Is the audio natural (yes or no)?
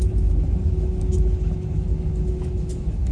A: no